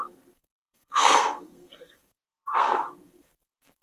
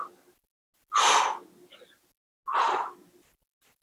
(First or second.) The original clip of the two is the second